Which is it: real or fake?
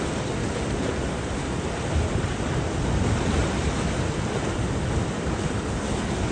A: real